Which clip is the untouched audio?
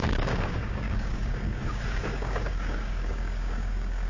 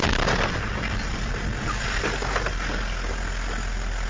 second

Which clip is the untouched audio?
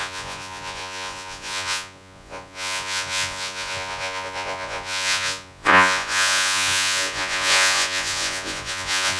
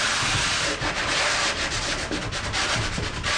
second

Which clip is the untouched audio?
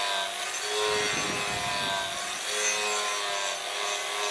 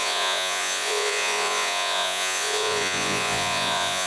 first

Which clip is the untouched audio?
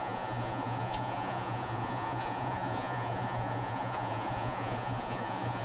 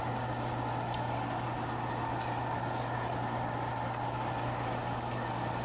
second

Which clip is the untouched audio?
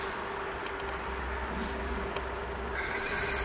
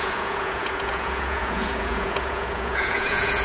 first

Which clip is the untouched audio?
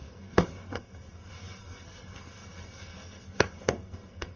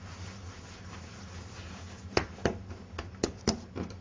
second